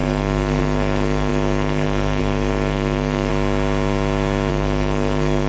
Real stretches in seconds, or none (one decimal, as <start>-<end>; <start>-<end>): 3.3-4.5